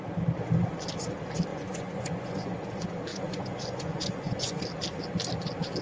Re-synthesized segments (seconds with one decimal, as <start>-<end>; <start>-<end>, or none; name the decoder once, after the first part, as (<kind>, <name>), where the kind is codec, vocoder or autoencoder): 1.5-2.5 (vocoder, Vocos); 3.1-4.6